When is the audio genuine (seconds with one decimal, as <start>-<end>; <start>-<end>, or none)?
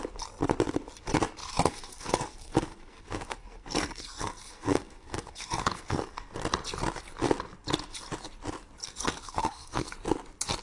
0.0-1.4; 6.3-8.8; 9.9-10.6